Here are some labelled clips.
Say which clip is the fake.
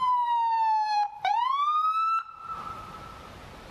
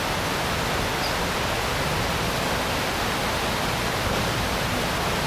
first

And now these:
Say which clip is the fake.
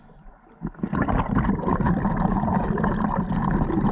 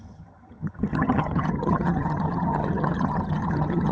second